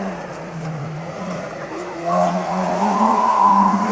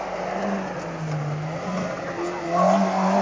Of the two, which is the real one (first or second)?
second